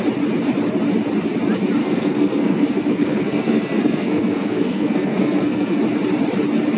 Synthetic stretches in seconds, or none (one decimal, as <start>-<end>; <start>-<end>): 1.8-5.8